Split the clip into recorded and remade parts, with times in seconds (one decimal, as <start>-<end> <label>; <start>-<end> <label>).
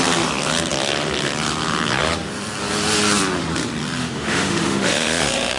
0.0-4.0 recorded; 4.0-5.6 remade